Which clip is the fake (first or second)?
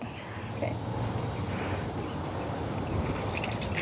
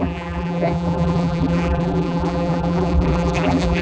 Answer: second